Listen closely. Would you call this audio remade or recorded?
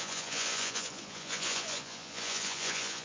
remade